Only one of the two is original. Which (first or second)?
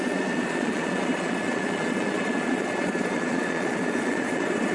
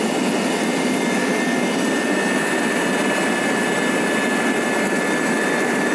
second